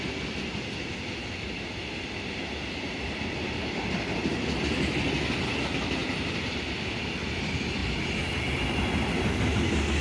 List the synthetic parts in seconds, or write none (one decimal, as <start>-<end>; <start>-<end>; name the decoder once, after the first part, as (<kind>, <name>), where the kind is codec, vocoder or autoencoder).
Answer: none